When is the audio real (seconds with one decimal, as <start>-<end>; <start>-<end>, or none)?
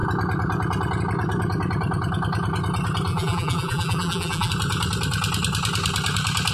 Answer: 0.0-3.1; 4.5-6.5